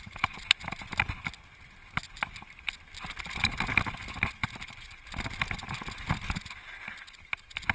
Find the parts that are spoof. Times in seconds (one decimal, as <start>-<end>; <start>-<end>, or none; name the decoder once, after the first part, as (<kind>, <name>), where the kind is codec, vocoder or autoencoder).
none